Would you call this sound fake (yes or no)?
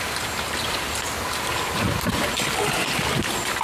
no